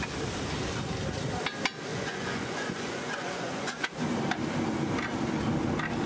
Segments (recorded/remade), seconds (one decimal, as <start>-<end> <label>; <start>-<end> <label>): 0.0-1.9 recorded; 1.9-4.0 remade; 4.0-6.1 recorded